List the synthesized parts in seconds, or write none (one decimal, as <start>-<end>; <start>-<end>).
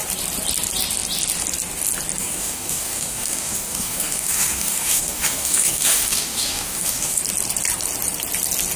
2.2-7.2